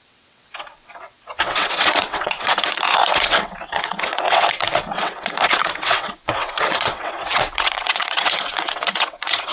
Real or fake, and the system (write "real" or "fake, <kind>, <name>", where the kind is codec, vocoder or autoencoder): fake, vocoder, WaveNeXt